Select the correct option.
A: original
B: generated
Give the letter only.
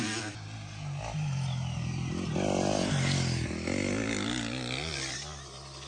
A